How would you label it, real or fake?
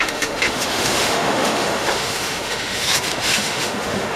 fake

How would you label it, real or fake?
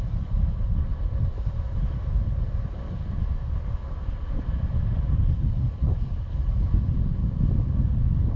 real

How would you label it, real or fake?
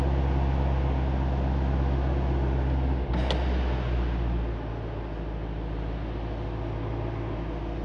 real